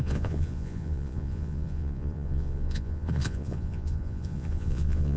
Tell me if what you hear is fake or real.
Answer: fake